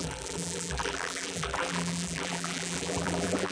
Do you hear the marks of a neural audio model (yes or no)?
yes